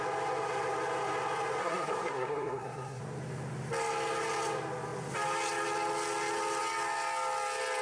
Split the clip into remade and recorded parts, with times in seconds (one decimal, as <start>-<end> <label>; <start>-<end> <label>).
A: 0.0-1.6 recorded; 1.6-3.0 remade; 3.0-7.8 recorded

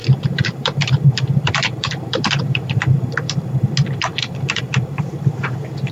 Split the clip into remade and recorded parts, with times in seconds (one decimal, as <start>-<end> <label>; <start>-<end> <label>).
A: 0.0-3.5 remade; 3.5-4.1 recorded; 4.1-5.3 remade; 5.3-5.9 recorded

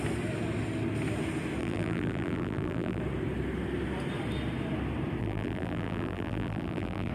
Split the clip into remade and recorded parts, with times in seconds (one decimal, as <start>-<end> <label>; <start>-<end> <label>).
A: 0.0-1.6 recorded; 1.6-3.0 remade; 3.0-5.2 recorded; 5.2-7.1 remade